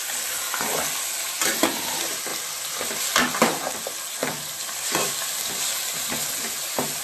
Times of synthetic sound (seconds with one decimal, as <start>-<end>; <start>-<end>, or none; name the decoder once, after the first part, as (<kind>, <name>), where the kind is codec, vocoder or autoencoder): 2.3-3.0 (vocoder, BigVGAN v2); 4.2-5.7